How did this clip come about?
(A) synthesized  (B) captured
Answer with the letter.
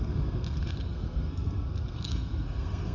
A